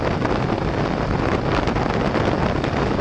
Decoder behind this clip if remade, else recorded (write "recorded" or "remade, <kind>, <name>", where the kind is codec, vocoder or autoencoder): recorded